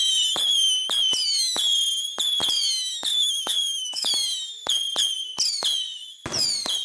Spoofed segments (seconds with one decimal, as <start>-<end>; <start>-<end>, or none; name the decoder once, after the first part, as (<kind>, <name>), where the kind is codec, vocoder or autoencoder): 3.1-4.1 (codec, DAC)